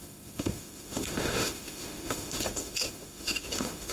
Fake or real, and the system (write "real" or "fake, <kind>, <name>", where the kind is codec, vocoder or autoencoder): fake, autoencoder, DAC-VAE